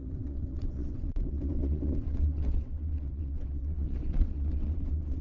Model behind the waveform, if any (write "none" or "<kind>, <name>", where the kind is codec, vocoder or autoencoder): vocoder, WaveNeXt